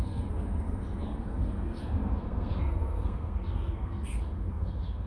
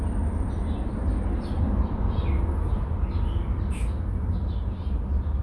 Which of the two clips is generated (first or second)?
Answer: first